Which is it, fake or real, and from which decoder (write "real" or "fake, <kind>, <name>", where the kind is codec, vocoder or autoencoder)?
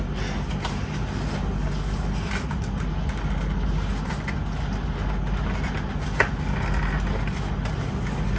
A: real